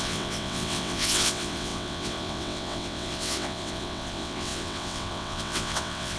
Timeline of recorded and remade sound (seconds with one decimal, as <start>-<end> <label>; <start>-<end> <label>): 0.0-6.2 remade